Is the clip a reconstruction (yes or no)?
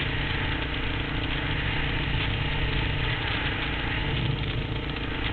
no